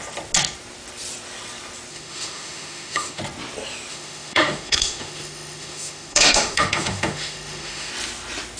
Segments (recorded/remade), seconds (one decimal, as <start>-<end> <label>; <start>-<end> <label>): 0.0-1.9 recorded; 1.9-3.2 remade; 3.2-3.9 recorded; 3.9-7.9 remade; 7.9-8.6 recorded